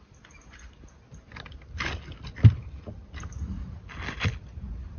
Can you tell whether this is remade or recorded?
recorded